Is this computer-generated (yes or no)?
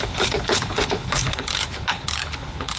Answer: yes